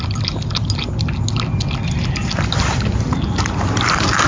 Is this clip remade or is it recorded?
recorded